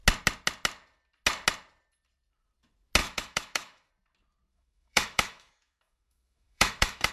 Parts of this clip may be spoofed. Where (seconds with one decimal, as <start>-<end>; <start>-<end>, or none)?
3.0-3.9; 4.5-7.1